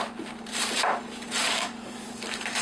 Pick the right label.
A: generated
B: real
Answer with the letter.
A